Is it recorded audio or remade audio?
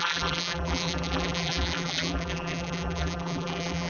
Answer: remade